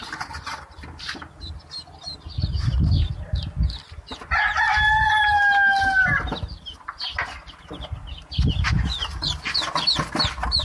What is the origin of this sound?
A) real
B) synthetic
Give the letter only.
A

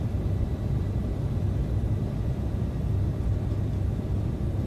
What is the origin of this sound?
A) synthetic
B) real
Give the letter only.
A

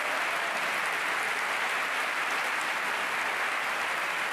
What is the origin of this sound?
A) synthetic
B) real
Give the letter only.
B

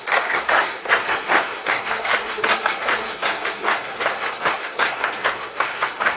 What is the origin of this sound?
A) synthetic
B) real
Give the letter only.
A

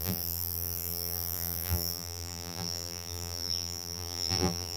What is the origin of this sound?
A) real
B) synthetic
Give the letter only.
B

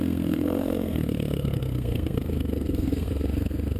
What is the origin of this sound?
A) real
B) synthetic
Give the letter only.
B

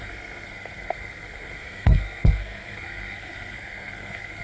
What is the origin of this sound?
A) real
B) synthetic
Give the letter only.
B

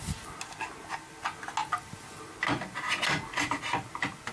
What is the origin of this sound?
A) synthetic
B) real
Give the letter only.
B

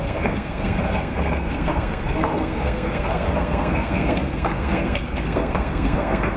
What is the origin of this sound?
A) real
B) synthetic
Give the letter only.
B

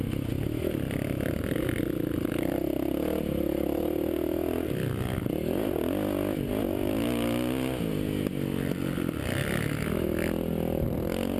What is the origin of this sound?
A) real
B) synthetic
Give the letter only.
A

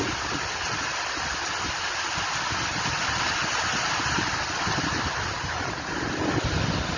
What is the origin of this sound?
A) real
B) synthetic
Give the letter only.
A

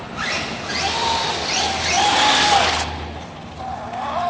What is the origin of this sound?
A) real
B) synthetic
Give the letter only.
A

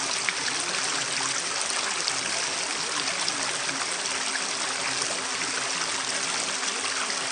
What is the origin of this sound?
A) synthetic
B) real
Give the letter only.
B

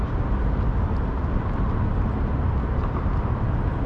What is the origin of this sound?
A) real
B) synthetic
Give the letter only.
A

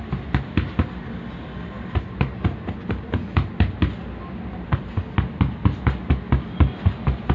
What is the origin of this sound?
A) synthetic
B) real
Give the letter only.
B